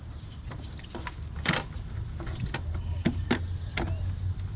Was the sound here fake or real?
real